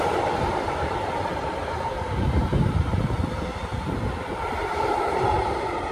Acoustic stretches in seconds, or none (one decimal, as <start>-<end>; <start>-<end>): none